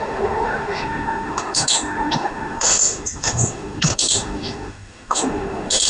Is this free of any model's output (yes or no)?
no